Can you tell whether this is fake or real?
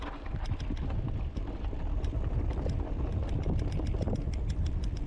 real